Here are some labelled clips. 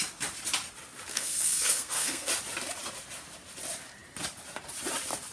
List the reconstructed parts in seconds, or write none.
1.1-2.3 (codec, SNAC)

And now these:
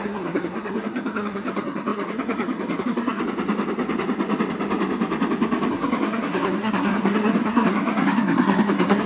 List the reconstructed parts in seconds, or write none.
0.0-3.2 (codec, SNAC); 5.7-9.1

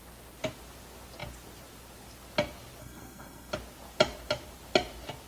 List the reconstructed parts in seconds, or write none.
2.8-3.5 (codec, SNAC)

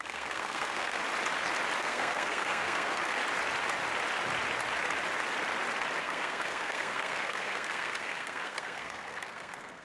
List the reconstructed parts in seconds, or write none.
0.0-1.0 (codec, SNAC); 1.8-3.2; 6.0-9.8

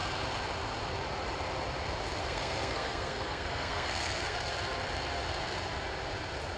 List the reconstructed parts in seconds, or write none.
2.2-4.5 (codec, SNAC)